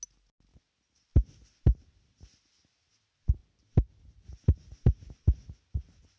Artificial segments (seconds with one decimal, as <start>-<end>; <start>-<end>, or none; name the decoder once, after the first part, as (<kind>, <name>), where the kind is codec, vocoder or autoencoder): none